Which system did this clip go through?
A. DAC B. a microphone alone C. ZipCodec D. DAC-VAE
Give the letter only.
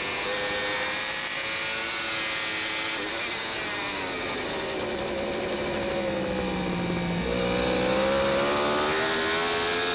B